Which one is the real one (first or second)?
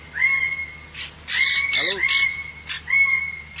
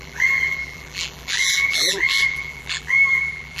first